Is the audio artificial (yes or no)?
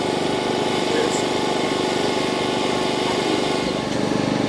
no